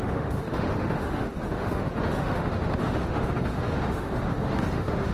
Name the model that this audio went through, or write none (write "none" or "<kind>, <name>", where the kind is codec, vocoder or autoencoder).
autoencoder, DAC-VAE